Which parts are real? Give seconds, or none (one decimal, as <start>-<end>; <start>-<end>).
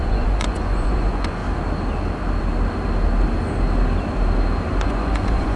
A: 1.4-4.8